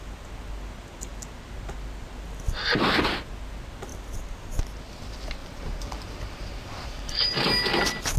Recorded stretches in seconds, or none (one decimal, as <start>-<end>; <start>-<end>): 0.0-5.4; 7.3-8.2